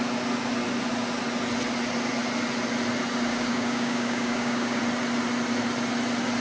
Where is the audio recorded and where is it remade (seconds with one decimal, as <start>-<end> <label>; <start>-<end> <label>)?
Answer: 0.0-3.3 recorded; 3.3-4.8 remade; 4.8-6.4 recorded